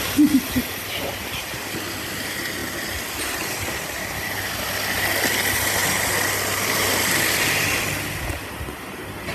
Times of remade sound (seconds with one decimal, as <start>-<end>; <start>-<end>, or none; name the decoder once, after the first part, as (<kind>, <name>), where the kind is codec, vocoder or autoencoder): none